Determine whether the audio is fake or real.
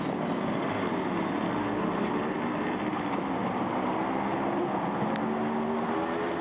real